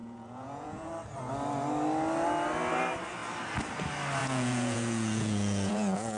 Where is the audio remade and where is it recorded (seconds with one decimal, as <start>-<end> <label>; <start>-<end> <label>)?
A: 0.0-0.9 remade; 0.9-4.2 recorded; 4.2-6.2 remade